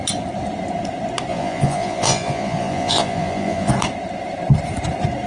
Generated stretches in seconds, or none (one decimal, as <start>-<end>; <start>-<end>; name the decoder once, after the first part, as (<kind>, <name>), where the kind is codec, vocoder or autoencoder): 1.3-3.7 (vocoder, Vocos)